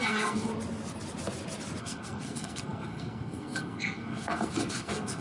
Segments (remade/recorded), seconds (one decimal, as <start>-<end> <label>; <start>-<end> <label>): 0.0-0.5 remade; 0.5-1.8 recorded; 1.8-5.2 remade